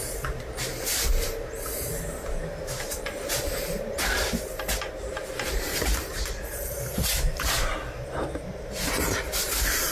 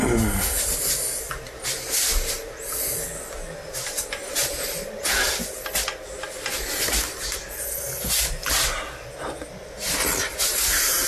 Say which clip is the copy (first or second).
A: first